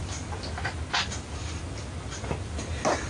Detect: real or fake real